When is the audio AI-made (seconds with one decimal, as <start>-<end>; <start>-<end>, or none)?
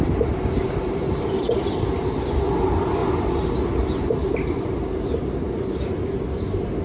none